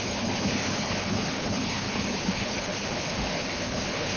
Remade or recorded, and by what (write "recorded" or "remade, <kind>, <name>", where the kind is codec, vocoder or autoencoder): remade, codec, HILCodec